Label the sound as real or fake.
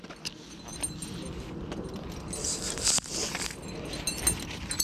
real